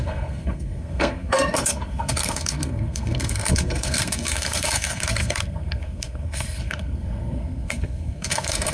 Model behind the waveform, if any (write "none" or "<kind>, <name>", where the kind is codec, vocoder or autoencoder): codec, SNAC